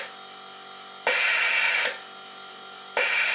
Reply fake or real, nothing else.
real